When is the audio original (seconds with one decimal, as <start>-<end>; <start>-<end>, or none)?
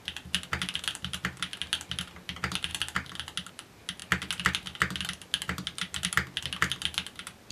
0.0-7.5